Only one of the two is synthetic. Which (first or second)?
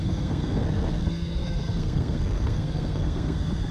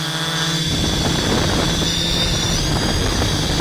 first